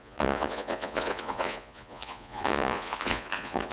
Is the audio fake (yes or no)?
yes